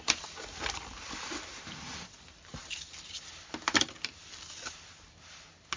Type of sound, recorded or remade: recorded